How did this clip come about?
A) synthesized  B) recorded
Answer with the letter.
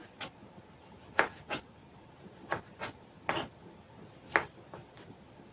B